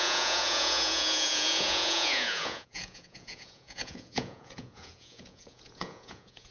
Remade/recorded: remade